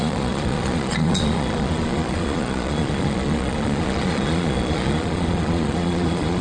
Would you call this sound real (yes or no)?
no